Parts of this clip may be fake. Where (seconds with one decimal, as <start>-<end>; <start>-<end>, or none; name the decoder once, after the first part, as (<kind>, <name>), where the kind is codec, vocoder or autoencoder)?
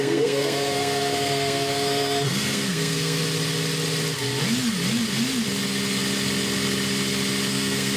0.0-3.2 (codec, SNAC); 7.5-8.0